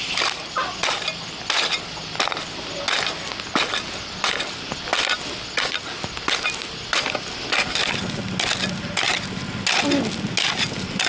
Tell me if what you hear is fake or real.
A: real